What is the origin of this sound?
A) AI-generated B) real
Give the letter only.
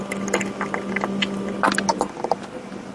B